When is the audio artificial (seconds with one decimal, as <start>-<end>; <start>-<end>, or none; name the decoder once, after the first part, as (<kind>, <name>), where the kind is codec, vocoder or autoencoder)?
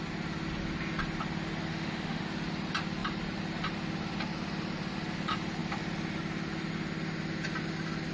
1.7-2.2 (autoencoder, DAC-VAE)